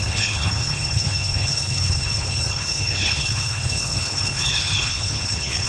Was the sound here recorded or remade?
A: remade